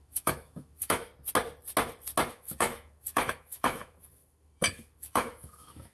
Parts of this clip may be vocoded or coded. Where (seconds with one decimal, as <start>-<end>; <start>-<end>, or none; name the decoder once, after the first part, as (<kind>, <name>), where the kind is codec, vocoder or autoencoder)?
0.0-1.1 (autoencoder, DAC-VAE); 2.3-5.9